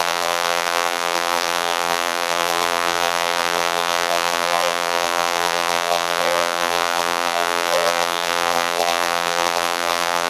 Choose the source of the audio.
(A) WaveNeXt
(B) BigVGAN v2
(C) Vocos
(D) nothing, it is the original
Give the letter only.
B